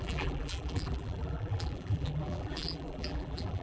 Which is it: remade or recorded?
remade